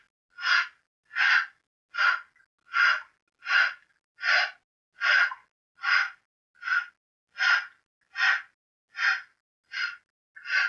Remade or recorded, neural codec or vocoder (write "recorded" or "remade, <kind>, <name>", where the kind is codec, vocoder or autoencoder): recorded